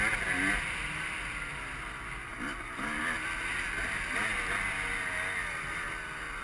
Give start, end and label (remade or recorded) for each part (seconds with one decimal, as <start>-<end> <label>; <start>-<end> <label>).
0.0-6.4 recorded